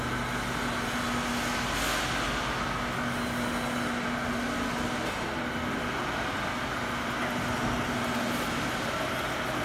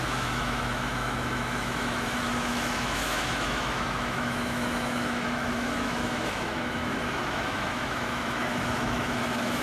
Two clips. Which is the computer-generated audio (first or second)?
second